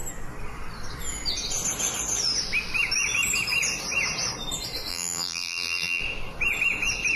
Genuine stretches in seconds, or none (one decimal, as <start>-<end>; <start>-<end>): 0.0-4.9; 6.0-7.2